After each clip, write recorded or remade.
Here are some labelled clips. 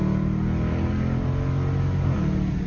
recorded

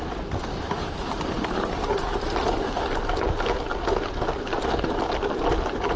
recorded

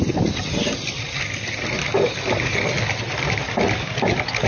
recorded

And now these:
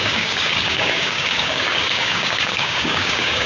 remade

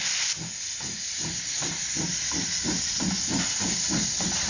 recorded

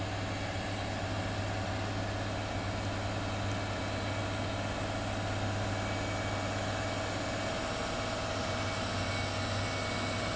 recorded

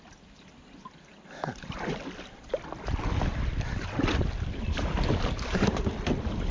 recorded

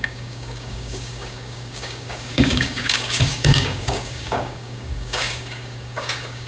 remade